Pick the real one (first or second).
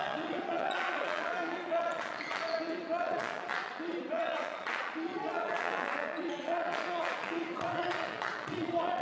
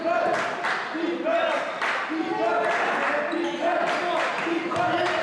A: second